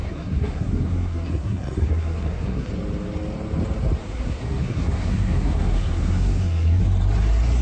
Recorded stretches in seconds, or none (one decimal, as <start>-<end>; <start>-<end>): 2.7-4.0; 6.8-7.6